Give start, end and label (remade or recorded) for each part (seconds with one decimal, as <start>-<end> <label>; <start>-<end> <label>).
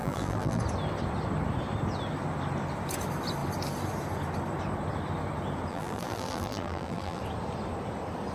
0.0-0.6 remade; 0.6-5.7 recorded; 5.7-7.2 remade; 7.2-8.3 recorded